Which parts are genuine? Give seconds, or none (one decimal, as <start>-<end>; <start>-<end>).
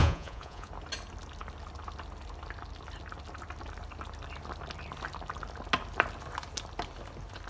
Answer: 0.7-7.5